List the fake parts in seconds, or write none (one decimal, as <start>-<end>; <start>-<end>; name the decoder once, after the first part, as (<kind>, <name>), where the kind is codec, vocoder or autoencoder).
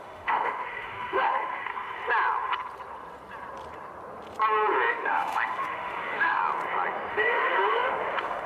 0.0-1.7 (autoencoder, DAC-VAE); 4.9-6.4; 7.1-8.5